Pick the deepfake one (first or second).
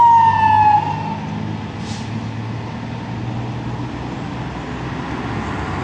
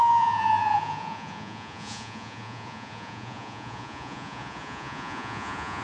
second